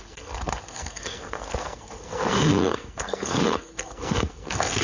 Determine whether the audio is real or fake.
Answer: fake